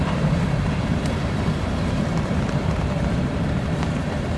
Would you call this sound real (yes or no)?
no